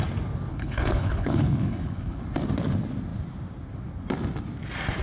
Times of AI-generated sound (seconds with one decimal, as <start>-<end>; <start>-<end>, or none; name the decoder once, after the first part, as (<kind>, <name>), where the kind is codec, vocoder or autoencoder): 0.5-2.2 (codec, HILCodec)